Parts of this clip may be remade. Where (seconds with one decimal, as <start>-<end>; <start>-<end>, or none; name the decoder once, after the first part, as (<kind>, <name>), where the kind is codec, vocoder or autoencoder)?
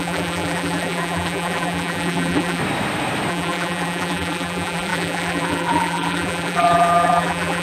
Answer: 0.0-2.6 (vocoder, BigVGAN v2); 3.3-7.6